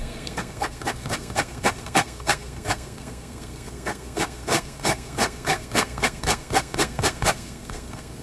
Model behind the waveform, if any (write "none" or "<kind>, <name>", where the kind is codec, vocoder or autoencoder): codec, SNAC